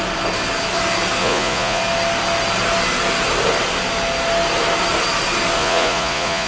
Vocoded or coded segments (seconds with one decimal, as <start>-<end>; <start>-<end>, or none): 1.2-1.8; 5.6-6.5